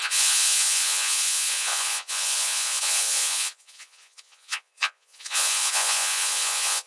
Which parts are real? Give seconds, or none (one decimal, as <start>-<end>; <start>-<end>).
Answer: none